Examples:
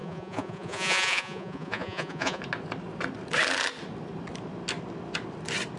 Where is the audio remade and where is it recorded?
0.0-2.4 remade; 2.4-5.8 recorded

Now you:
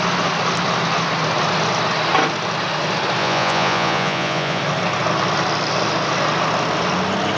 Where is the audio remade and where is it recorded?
0.0-3.2 recorded; 3.2-4.6 remade; 4.6-7.4 recorded

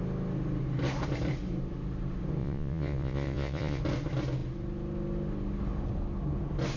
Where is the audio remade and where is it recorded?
0.0-2.4 recorded; 2.4-3.8 remade; 3.8-6.8 recorded

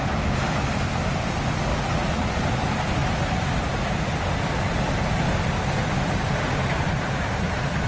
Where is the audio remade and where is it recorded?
0.0-1.7 recorded; 1.7-2.4 remade; 2.4-7.9 recorded

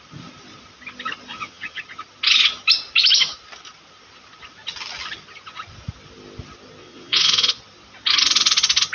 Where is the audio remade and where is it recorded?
0.0-1.3 recorded; 1.3-1.8 remade; 1.8-6.8 recorded; 6.8-7.6 remade; 7.6-8.9 recorded

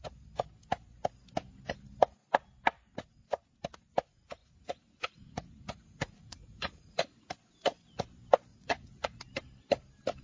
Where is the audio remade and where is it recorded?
0.0-4.4 recorded; 4.4-7.3 remade; 7.3-8.5 recorded; 8.5-9.2 remade; 9.2-10.2 recorded

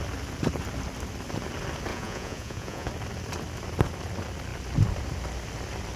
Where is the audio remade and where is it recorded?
0.0-1.9 recorded; 1.9-2.9 remade; 2.9-6.0 recorded

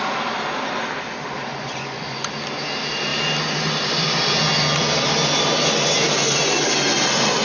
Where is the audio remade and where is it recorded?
0.0-1.5 recorded; 1.5-2.3 remade; 2.3-7.4 recorded